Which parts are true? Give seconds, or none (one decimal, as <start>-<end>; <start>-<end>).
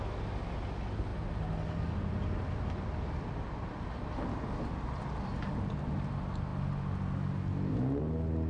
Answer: 0.0-8.5